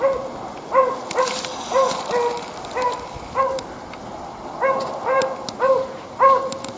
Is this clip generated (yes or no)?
no